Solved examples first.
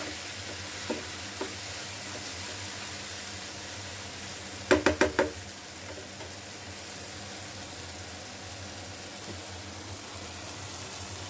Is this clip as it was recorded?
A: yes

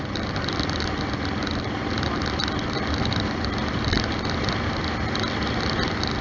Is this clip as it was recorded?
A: yes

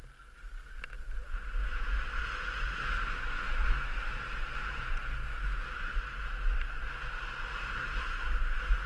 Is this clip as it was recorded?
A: yes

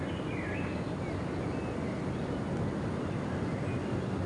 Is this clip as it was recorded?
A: yes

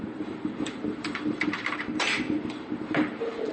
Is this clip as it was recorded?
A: no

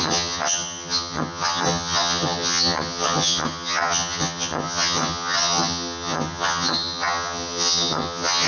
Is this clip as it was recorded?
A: no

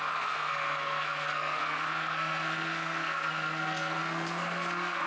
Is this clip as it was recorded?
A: no